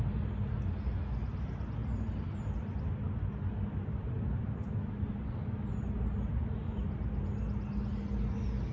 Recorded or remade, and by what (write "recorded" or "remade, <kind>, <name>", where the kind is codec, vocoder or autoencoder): recorded